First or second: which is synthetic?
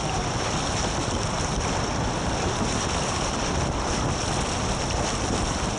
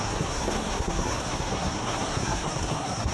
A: second